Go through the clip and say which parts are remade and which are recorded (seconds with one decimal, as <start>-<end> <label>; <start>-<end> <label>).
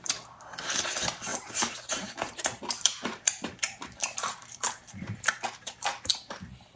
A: 0.0-1.3 recorded; 1.3-5.2 remade; 5.2-6.1 recorded; 6.1-6.8 remade